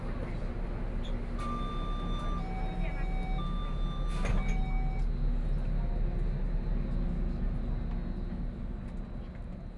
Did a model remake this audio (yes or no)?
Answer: no